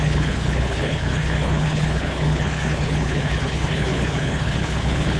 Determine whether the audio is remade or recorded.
remade